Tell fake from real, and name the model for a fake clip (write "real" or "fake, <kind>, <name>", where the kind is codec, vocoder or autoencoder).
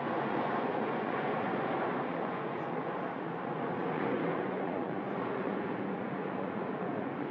fake, vocoder, Vocos